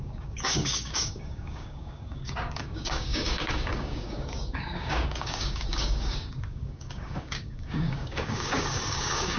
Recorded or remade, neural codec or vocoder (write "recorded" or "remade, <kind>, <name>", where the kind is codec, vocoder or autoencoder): remade, codec, DAC